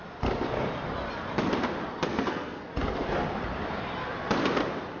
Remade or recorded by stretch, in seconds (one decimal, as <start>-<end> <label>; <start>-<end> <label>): 0.0-2.1 recorded; 2.1-2.7 remade; 2.7-5.0 recorded